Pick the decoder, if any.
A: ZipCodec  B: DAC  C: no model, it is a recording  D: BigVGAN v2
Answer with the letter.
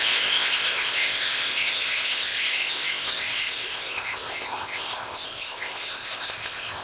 A